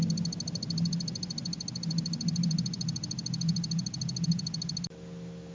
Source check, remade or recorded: recorded